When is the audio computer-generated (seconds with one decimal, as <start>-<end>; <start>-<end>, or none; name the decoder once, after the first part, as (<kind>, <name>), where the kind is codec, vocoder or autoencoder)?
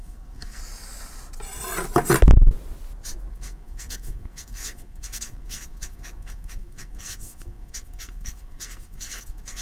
0.0-0.6 (codec, SNAC); 3.3-9.6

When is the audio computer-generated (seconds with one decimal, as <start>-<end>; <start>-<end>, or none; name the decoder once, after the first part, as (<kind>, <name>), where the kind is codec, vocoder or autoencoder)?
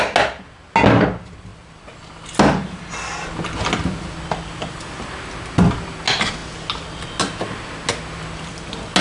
none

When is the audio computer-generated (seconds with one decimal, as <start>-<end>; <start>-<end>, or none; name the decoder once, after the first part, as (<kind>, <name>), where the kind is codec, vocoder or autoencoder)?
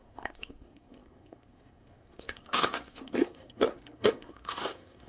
0.0-5.1 (codec, SNAC)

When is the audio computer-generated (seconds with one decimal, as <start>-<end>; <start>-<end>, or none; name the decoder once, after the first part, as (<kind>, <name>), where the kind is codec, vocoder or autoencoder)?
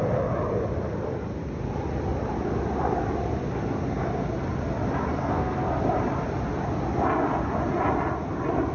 5.2-5.8 (codec, SNAC)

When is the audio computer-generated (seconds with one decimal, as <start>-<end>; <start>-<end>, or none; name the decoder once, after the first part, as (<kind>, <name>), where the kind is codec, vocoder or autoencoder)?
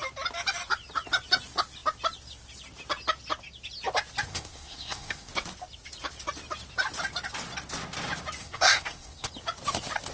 4.3-5.3 (codec, SNAC); 8.4-9.3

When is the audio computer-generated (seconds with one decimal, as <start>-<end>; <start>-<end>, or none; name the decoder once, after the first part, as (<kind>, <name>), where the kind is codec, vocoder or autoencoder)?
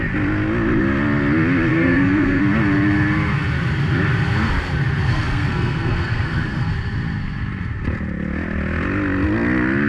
1.7-2.4 (codec, SNAC); 5.1-6.7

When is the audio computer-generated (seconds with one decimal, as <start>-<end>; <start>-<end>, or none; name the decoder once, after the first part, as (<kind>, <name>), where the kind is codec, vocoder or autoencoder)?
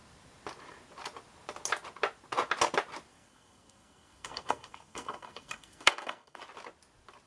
3.1-6.4 (codec, SNAC)